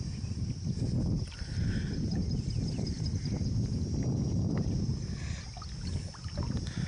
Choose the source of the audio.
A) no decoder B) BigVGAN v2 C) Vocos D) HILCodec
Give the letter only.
A